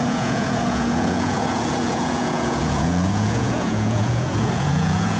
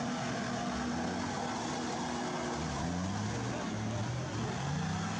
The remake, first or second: first